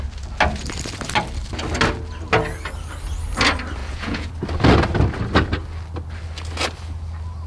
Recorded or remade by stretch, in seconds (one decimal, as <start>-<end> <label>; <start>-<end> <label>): 0.0-3.8 recorded; 3.8-4.3 remade; 4.3-7.5 recorded